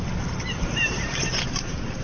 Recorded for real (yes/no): yes